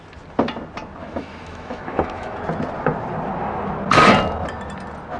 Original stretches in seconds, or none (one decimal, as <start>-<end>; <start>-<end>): 0.0-1.0; 2.4-5.2